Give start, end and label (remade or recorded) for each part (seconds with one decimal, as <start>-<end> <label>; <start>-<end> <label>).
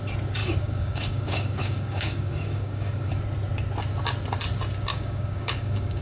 0.0-0.4 recorded; 0.4-3.2 remade; 3.2-4.9 recorded; 4.9-6.0 remade